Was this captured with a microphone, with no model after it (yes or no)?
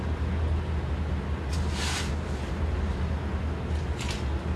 yes